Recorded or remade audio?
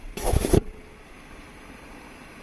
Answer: recorded